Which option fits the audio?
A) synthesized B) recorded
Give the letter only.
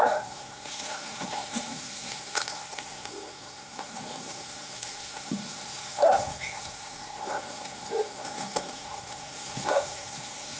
A